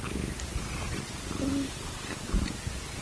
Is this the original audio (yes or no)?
yes